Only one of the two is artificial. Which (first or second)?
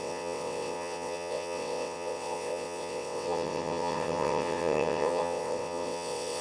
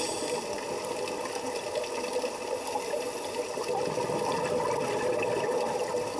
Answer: first